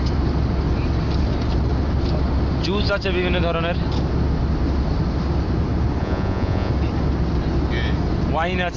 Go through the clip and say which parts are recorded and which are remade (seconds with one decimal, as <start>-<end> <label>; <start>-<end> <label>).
0.0-6.0 recorded; 6.0-6.7 remade; 6.7-8.8 recorded